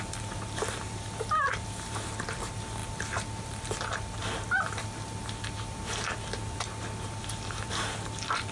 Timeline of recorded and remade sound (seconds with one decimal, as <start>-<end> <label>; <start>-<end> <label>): 0.0-8.5 recorded